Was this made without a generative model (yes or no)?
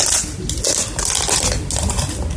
yes